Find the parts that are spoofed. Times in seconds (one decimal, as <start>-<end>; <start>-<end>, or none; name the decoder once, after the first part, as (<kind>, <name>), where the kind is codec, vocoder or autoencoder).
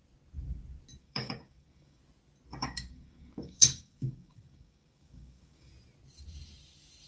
1.0-2.0 (codec, DAC); 2.6-5.7